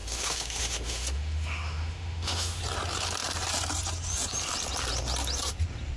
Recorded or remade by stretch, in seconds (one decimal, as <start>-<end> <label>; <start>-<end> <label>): 0.0-2.6 remade; 2.6-6.0 recorded